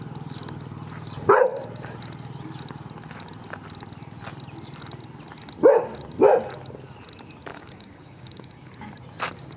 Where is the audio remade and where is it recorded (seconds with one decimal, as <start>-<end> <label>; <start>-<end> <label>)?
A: 0.0-7.5 recorded; 7.5-8.7 remade; 8.7-9.6 recorded

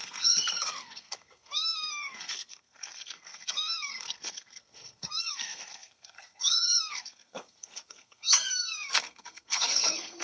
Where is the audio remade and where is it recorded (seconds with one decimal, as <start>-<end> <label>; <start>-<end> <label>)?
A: 0.0-10.2 remade

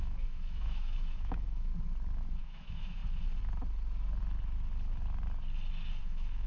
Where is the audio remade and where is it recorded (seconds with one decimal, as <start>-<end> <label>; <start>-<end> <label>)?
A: 0.0-1.7 remade; 1.7-2.4 recorded; 2.4-3.0 remade; 3.0-6.0 recorded; 6.0-6.5 remade

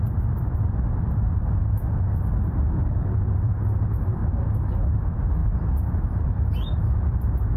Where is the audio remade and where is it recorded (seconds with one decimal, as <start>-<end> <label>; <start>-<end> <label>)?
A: 0.0-4.2 remade; 4.2-5.0 recorded; 5.0-5.4 remade; 5.4-5.9 recorded; 5.9-7.6 remade